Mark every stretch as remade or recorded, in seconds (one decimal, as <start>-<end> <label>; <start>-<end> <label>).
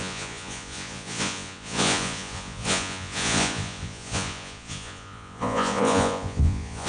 0.0-6.9 remade